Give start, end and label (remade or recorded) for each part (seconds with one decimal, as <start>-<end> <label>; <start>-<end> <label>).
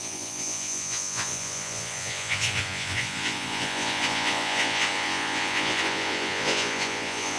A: 0.0-7.4 remade